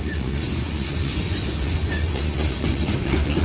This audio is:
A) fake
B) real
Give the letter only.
A